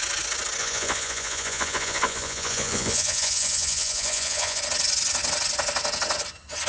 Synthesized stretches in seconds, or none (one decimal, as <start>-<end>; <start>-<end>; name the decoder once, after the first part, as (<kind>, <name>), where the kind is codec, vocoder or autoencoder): 0.6-4.6 (vocoder, Vocos)